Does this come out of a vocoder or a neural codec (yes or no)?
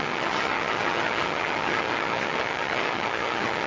yes